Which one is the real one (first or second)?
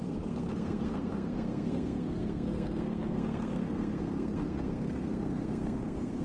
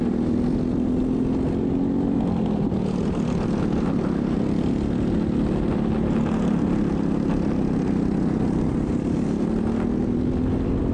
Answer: second